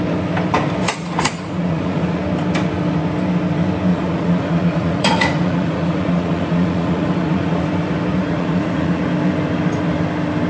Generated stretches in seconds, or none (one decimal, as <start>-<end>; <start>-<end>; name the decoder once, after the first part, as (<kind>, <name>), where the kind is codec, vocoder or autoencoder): 0.8-2.2 (vocoder, Vocos); 3.9-7.6; 8.2-9.0